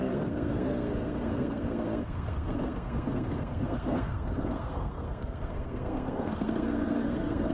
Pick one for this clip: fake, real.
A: fake